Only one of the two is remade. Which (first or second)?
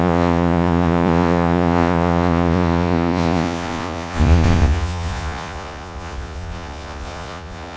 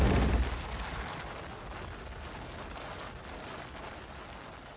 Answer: first